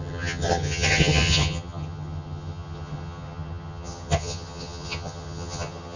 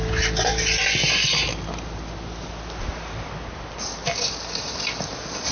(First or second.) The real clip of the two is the second